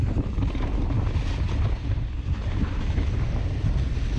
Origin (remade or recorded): recorded